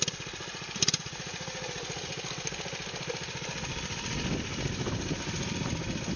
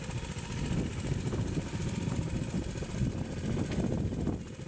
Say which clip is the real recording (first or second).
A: second